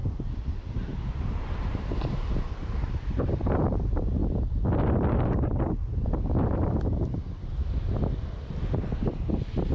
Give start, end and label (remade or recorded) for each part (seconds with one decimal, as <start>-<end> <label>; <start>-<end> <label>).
0.0-4.2 remade; 4.2-9.7 recorded